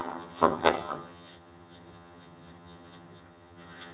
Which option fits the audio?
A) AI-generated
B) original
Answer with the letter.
A